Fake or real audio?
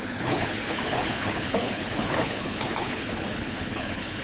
fake